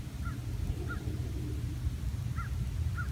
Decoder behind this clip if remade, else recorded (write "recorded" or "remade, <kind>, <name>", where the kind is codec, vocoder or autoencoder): recorded